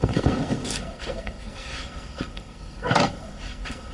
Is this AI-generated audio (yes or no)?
yes